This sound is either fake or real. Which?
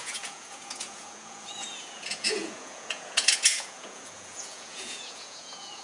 fake